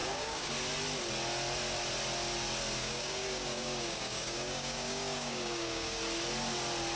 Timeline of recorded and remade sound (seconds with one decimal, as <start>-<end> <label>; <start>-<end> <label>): 0.0-0.5 remade; 0.5-2.8 recorded; 2.8-6.0 remade; 6.0-7.0 recorded